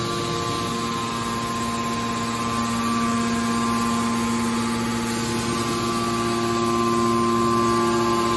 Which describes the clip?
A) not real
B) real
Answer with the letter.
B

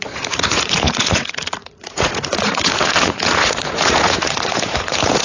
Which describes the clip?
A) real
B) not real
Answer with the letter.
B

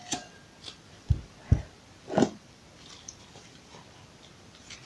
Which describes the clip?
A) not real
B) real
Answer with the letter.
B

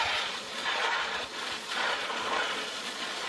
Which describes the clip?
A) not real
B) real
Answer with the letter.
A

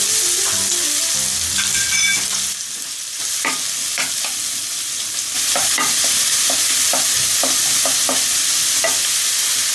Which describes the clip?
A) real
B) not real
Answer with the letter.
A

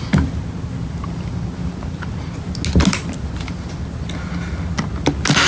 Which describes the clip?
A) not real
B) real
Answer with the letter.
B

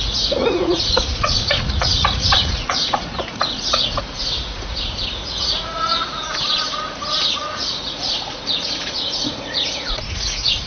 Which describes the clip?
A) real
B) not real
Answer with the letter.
B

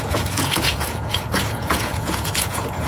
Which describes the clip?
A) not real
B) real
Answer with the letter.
A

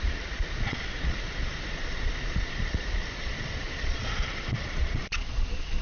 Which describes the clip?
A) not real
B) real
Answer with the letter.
A